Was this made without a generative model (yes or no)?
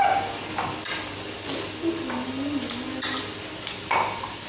yes